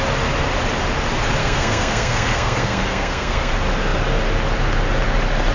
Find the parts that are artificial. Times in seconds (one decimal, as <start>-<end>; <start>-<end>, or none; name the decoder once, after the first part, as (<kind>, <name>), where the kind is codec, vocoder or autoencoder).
1.4-3.5 (codec, SNAC)